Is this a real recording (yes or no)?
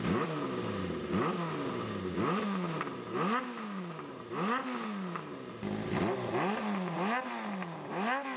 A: yes